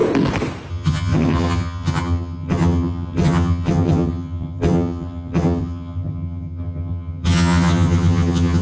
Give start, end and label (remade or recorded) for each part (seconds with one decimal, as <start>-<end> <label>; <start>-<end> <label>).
0.0-0.7 recorded; 0.7-8.6 remade